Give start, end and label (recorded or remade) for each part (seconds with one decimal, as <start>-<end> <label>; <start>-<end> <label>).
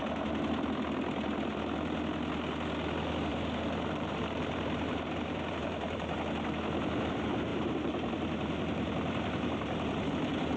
0.0-3.3 recorded; 3.3-6.2 remade; 6.2-7.5 recorded; 7.5-10.1 remade; 10.1-10.6 recorded